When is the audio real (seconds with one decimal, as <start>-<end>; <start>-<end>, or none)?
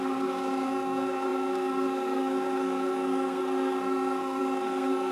none